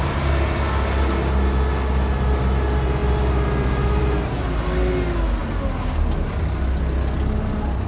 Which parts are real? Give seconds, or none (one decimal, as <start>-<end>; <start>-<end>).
0.0-7.9